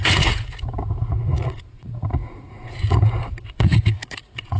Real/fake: fake